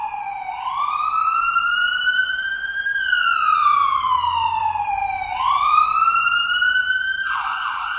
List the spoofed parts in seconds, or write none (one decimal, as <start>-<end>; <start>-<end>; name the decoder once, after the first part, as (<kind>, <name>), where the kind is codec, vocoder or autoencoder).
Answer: 1.2-4.1 (vocoder, BigVGAN v2); 5.0-8.0